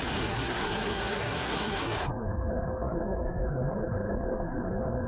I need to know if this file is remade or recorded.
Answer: remade